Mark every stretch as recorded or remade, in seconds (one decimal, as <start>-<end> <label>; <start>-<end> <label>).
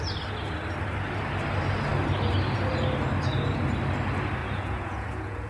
0.0-4.4 recorded; 4.4-5.5 remade